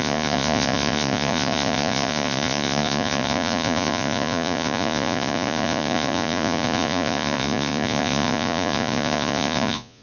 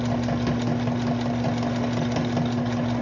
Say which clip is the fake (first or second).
first